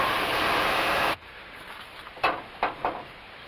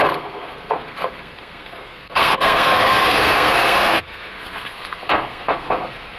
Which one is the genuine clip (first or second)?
first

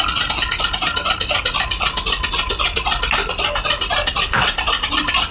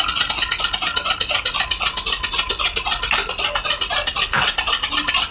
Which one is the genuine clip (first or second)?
second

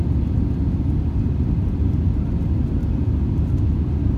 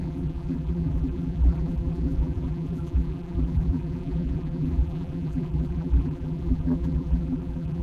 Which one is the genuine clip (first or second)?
first